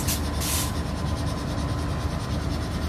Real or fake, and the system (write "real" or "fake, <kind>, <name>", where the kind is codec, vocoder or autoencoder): real